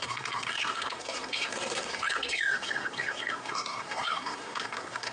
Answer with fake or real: fake